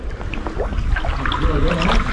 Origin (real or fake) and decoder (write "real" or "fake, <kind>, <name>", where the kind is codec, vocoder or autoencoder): real